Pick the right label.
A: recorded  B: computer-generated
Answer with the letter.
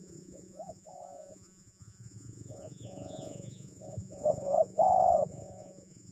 B